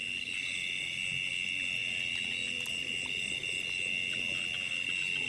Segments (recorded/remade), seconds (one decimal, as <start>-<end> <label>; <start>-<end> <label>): 0.0-5.3 recorded